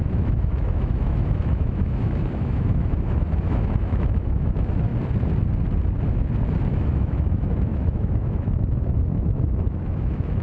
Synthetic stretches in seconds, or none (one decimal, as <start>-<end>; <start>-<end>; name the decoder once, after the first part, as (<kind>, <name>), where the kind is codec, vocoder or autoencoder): 0.0-4.9 (autoencoder, DAC-VAE); 6.7-10.4